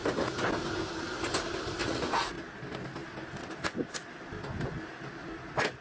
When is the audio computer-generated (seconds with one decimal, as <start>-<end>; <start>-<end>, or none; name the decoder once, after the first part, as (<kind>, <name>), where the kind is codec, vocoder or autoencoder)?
1.8-2.3 (vocoder, Vocos)